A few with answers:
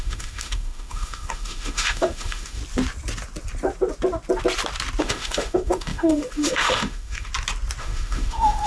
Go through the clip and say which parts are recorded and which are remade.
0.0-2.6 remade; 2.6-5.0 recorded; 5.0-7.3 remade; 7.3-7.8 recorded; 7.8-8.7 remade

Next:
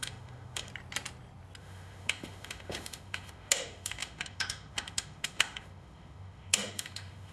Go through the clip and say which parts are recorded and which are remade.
0.0-0.7 remade; 0.7-1.6 recorded; 1.6-7.3 remade

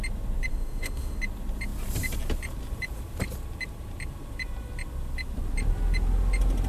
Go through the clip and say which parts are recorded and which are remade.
0.0-0.5 recorded; 0.5-1.2 remade; 1.2-6.7 recorded

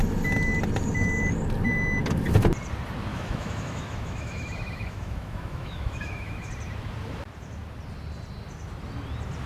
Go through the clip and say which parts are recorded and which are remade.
0.0-3.1 recorded; 3.1-6.5 remade; 6.5-9.5 recorded

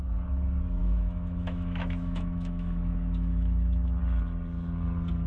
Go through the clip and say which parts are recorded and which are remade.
0.0-0.8 recorded; 0.8-4.0 remade; 4.0-5.3 recorded